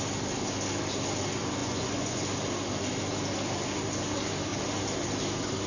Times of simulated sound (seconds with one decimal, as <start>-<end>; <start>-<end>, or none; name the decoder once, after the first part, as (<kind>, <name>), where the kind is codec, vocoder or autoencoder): 1.6-2.2 (vocoder, Vocos)